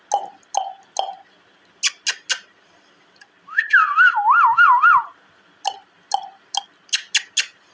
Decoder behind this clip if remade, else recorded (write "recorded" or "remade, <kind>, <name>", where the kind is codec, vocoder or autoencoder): recorded